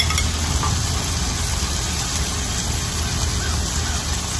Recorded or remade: recorded